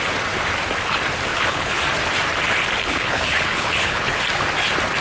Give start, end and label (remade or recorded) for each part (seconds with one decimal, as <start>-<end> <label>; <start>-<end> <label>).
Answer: 0.0-1.3 recorded; 1.3-1.8 remade; 1.8-2.8 recorded; 2.8-4.2 remade; 4.2-5.0 recorded